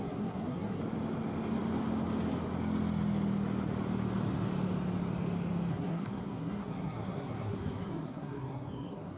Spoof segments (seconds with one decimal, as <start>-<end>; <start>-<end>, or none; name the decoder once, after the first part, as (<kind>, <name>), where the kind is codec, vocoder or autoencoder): 0.0-0.8 (codec, SNAC); 5.7-9.2